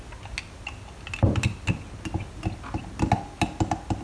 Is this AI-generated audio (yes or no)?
no